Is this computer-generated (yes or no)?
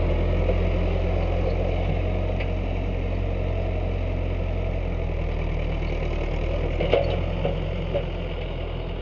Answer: no